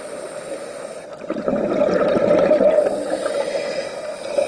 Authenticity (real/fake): real